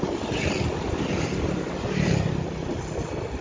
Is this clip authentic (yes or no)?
yes